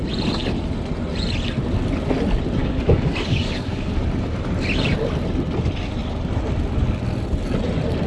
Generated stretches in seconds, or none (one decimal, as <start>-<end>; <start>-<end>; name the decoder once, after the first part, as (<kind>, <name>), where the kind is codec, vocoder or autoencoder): 2.6-4.0 (codec, DAC)